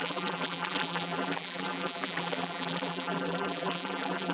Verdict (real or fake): fake